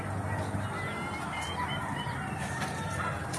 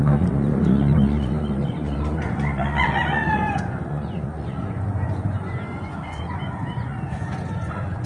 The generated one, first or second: second